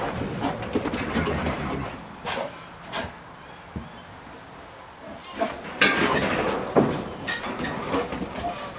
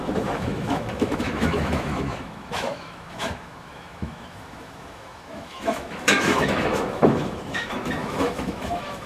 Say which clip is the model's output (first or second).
second